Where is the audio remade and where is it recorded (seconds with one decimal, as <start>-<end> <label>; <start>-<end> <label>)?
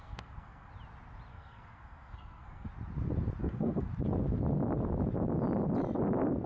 0.0-0.7 remade; 0.7-1.3 recorded; 1.3-2.7 remade; 2.7-3.4 recorded; 3.4-3.9 remade; 3.9-6.5 recorded